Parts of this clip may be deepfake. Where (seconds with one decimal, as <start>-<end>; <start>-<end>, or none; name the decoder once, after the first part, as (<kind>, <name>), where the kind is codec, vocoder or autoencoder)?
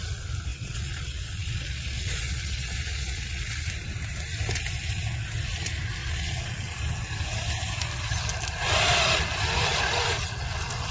0.5-3.6 (vocoder, Vocos); 6.0-6.8